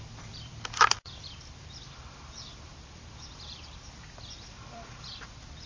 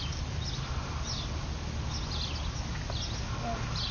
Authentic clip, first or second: second